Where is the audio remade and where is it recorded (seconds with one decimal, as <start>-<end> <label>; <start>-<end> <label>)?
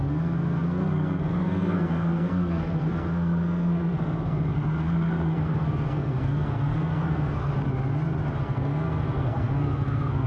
0.0-7.5 remade; 7.5-8.4 recorded; 8.4-10.3 remade